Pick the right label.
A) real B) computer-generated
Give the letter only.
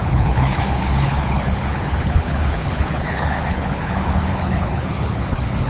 B